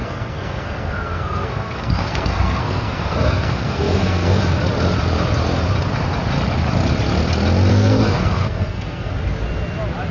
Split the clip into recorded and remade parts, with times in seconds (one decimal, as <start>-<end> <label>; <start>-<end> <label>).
0.0-4.4 remade; 4.4-7.7 recorded; 7.7-9.1 remade; 9.1-10.1 recorded

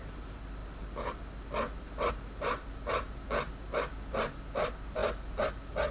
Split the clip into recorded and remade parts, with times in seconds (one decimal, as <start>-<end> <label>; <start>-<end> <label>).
0.0-5.9 remade

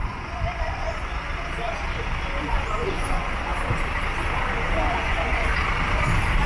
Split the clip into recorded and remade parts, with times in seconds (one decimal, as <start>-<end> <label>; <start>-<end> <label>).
0.0-1.1 remade; 1.1-2.4 recorded; 2.4-3.5 remade; 3.5-4.8 recorded; 4.8-5.5 remade; 5.5-6.5 recorded